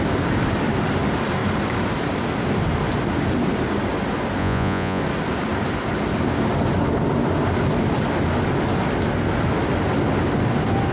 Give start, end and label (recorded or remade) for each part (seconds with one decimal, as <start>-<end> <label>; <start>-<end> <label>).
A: 0.0-4.4 recorded; 4.4-5.0 remade; 5.0-10.9 recorded

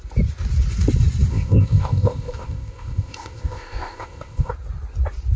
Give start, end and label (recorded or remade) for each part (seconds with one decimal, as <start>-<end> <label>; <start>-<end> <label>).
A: 0.0-1.3 recorded; 1.3-4.5 remade; 4.5-5.4 recorded

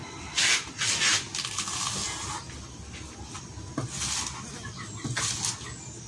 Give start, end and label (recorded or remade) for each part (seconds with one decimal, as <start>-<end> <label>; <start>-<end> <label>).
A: 0.0-6.1 recorded